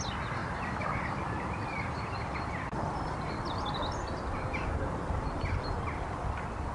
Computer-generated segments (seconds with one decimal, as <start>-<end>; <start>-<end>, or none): none